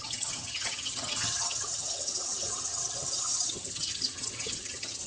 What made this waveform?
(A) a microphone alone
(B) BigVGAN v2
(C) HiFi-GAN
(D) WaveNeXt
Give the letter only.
C